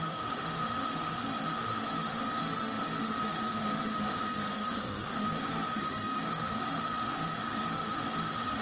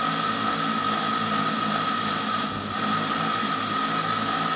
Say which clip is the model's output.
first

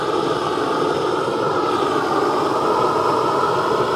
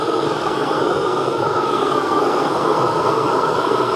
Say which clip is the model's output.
second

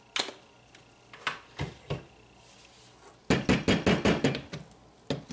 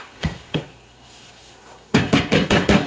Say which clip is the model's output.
second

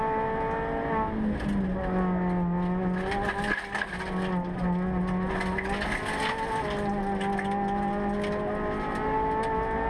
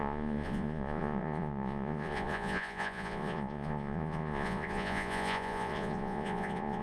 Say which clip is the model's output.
second